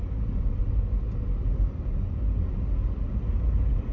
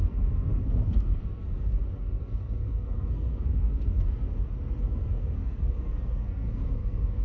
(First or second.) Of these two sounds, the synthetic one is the second